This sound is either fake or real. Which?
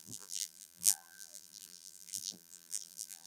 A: fake